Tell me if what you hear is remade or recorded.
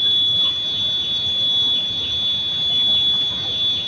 recorded